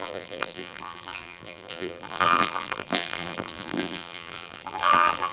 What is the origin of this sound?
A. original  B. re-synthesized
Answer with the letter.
B